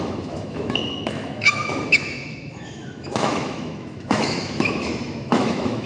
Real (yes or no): no